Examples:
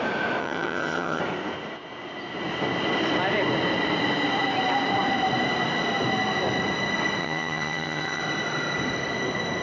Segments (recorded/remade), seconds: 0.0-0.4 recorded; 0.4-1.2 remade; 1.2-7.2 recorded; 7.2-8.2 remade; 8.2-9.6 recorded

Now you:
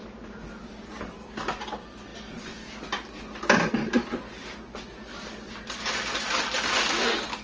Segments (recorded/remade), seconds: 0.0-7.4 recorded

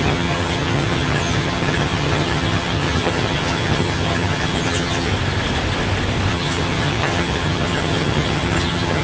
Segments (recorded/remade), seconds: 0.0-5.1 remade; 5.1-6.3 recorded; 6.3-9.0 remade

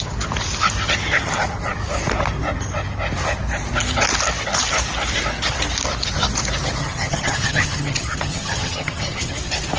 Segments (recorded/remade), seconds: 0.0-6.8 recorded; 6.8-9.3 remade; 9.3-9.8 recorded